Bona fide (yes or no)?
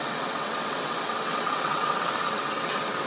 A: no